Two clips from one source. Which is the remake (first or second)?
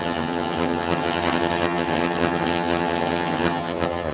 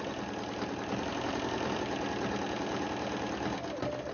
first